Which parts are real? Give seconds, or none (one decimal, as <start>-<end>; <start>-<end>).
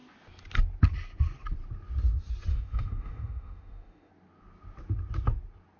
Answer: 0.0-2.5; 4.1-5.8